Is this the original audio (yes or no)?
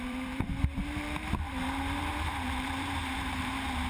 no